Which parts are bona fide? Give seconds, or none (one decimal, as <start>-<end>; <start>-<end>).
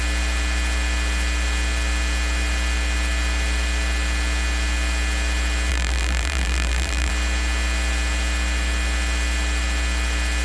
0.0-5.7; 7.1-10.4